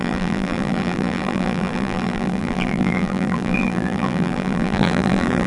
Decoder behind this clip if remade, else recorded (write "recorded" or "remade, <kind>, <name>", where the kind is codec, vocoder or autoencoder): remade, vocoder, BigVGAN v2